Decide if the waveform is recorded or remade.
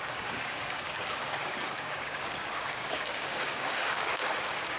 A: remade